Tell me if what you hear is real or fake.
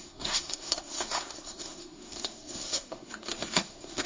fake